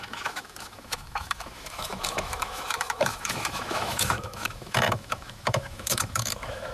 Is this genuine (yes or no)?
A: no